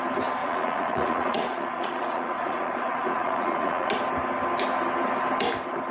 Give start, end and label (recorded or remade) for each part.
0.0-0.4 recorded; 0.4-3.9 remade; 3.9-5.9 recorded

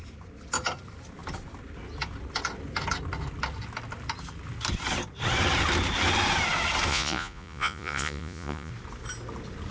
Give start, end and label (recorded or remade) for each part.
0.0-6.9 recorded; 6.9-8.7 remade; 8.7-9.7 recorded

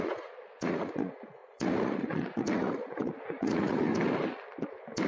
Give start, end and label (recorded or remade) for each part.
0.0-3.9 remade; 3.9-5.1 recorded

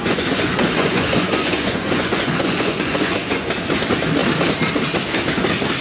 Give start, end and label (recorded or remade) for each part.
0.0-3.5 remade; 3.5-5.8 recorded